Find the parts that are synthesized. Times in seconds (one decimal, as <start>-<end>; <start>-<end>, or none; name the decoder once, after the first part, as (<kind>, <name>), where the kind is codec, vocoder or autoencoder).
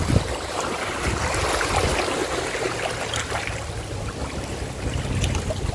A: 0.0-0.9 (vocoder, BigVGAN v2)